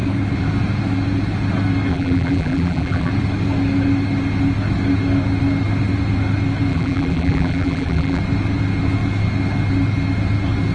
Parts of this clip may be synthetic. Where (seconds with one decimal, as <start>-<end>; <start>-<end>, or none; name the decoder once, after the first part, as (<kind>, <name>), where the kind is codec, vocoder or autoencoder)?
1.9-3.1 (vocoder, BigVGAN v2); 6.7-8.2